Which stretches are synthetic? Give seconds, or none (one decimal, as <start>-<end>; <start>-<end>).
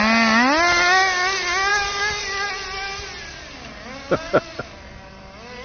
none